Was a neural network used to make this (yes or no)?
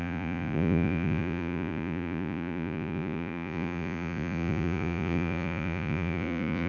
yes